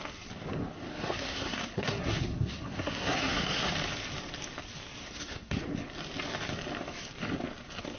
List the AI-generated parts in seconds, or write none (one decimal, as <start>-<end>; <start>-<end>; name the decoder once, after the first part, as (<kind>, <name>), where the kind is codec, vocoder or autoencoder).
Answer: 0.9-3.7 (codec, SNAC); 5.0-5.6